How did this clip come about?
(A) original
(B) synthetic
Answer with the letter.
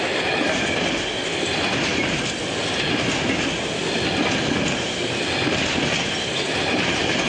A